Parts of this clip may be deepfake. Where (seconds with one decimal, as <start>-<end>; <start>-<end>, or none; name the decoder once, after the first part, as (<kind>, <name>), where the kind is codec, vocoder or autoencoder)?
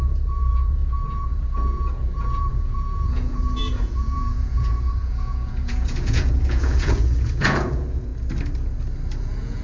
0.0-8.1 (vocoder, Vocos); 9.2-9.6